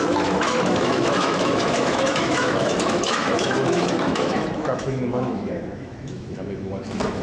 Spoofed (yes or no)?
yes